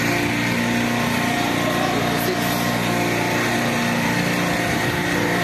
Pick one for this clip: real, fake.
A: real